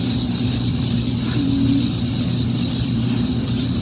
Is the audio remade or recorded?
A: recorded